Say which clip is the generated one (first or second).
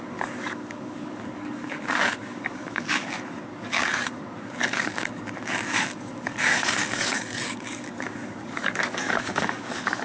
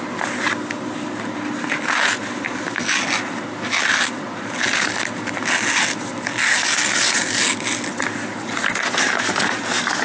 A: first